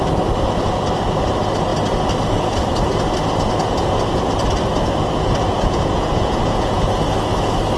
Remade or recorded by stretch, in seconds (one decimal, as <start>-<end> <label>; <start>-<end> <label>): 0.0-5.5 recorded; 5.5-7.0 remade; 7.0-7.8 recorded